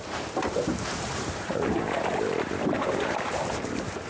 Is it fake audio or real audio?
fake